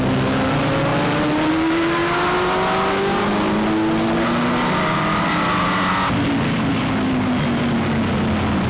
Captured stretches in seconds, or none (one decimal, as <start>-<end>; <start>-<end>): 0.0-8.7